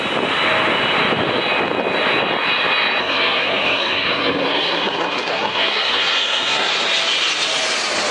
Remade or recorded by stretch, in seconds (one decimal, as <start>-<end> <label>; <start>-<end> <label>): 0.0-3.0 recorded; 3.0-6.7 remade; 6.7-8.1 recorded